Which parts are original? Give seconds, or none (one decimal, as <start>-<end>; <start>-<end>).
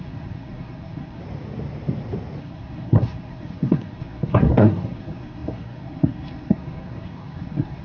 1.2-2.4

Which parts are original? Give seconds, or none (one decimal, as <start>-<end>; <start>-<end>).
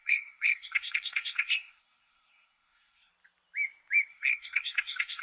3.1-4.1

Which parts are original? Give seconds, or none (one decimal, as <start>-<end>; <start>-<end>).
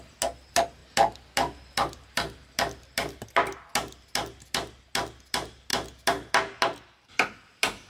0.0-7.9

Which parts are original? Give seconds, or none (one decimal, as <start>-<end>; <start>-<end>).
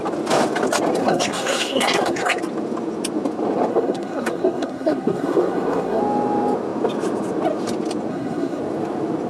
0.0-1.0; 2.4-3.7; 6.0-8.1; 8.6-9.3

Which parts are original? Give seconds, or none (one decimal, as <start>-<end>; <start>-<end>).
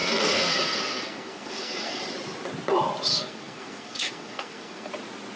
2.0-3.1; 4.9-5.4